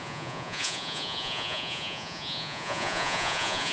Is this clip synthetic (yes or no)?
yes